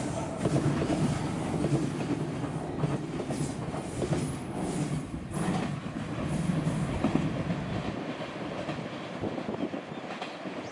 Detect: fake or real real